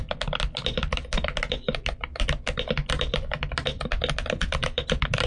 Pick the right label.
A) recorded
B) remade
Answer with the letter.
A